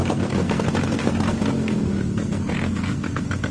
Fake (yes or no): yes